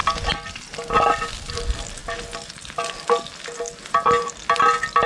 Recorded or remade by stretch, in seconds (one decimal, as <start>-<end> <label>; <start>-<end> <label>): 0.0-5.1 recorded